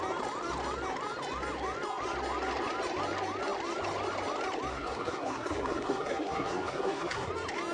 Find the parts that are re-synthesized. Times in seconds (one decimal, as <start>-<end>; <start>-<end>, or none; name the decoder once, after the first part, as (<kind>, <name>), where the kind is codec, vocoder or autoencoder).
4.7-7.3 (codec, SNAC)